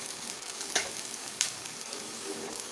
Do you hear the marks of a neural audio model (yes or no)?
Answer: yes